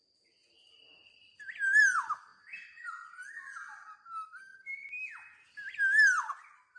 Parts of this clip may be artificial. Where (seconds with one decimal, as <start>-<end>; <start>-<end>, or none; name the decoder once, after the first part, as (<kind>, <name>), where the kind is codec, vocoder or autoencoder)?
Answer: none